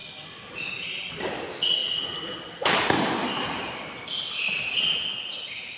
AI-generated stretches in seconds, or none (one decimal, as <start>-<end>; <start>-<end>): none